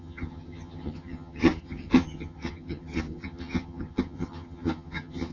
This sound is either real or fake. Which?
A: fake